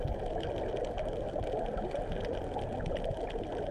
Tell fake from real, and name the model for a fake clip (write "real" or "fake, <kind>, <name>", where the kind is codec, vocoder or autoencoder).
real